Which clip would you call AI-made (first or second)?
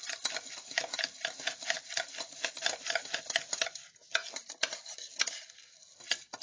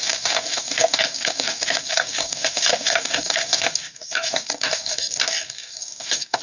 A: second